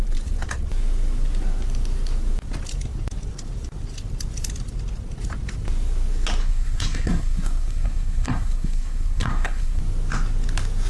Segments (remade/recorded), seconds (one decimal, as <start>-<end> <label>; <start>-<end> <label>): 0.0-6.4 recorded; 6.4-9.8 remade; 9.8-10.9 recorded